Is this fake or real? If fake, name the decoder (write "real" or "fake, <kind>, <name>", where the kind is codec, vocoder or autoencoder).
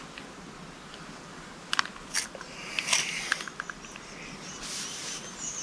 real